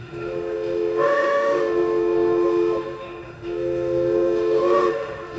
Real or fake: fake